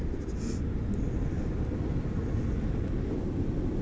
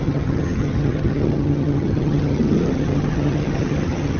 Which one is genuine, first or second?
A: first